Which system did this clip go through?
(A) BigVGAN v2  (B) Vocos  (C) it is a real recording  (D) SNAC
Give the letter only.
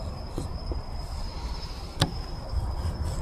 C